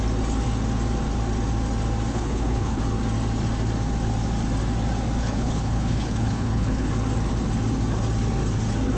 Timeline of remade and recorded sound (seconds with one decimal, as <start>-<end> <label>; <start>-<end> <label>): 0.0-2.1 recorded; 2.1-2.8 remade; 2.8-5.2 recorded; 5.2-6.9 remade; 6.9-9.0 recorded